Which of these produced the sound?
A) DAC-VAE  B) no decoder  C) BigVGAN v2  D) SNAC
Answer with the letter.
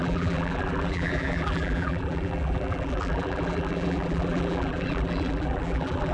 C